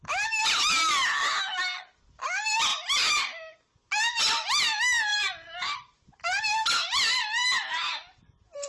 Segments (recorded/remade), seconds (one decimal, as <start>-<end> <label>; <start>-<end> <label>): 0.0-8.7 recorded